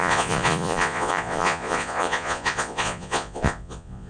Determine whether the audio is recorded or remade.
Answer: remade